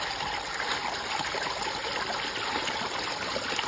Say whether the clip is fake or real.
real